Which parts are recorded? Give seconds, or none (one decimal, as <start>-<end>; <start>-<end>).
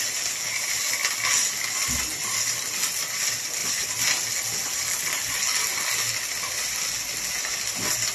0.0-8.1